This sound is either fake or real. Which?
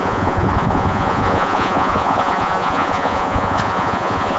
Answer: fake